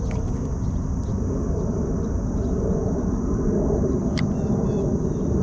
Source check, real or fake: real